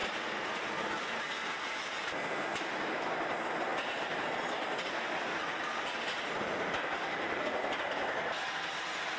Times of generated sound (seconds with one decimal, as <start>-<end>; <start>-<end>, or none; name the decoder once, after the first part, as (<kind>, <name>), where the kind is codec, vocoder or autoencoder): none